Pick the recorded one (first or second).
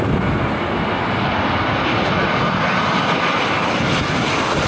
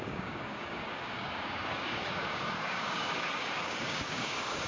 first